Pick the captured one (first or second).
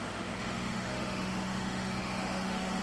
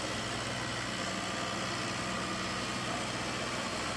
second